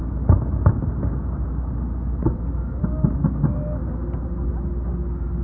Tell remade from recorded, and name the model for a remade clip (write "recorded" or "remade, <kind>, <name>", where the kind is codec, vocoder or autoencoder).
recorded